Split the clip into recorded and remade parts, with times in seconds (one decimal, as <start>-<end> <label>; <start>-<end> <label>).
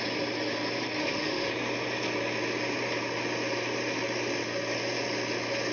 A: 0.0-1.0 recorded; 1.0-1.5 remade; 1.5-5.7 recorded